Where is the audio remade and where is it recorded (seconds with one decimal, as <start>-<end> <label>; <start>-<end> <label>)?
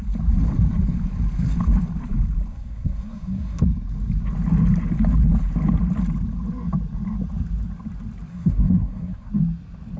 0.0-2.5 recorded; 2.5-3.6 remade; 3.6-8.3 recorded; 8.3-9.3 remade; 9.3-10.0 recorded